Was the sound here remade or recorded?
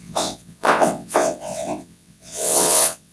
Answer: remade